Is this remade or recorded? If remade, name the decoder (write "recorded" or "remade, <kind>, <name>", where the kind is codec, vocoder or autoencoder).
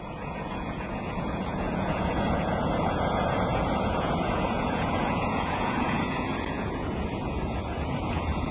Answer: remade, vocoder, Vocos